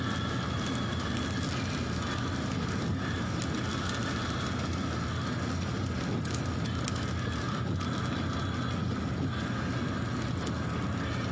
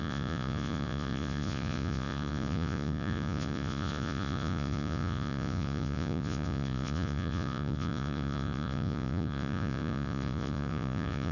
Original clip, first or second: first